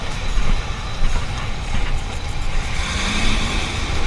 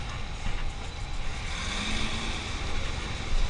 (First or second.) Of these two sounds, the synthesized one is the first